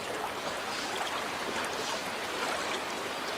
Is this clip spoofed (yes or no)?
no